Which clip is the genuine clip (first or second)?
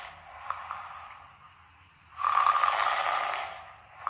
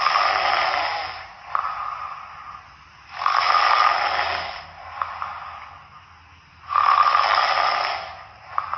second